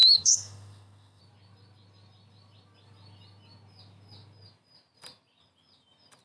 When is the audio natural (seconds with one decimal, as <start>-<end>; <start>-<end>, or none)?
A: 1.2-6.2